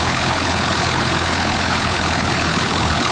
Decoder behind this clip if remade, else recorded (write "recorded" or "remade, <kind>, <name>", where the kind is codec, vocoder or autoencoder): remade, codec, HILCodec